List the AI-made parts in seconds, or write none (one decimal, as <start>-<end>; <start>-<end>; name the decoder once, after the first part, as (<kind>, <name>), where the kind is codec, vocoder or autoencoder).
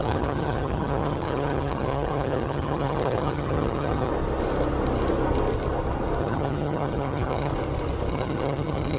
0.0-4.1 (vocoder, HiFi-GAN); 6.2-7.5; 8.1-9.0